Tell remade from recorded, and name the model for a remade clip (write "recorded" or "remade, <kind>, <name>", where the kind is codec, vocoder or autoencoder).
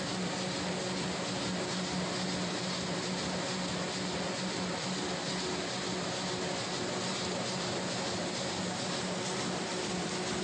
recorded